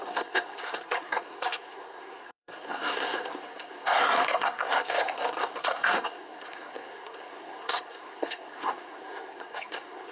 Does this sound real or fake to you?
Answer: fake